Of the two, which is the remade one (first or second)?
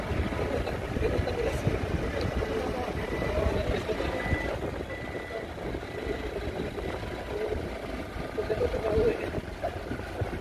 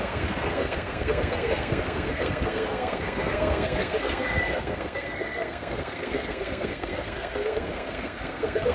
second